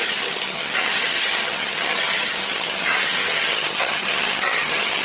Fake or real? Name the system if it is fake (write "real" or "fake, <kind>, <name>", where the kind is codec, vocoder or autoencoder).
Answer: fake, vocoder, HiFi-GAN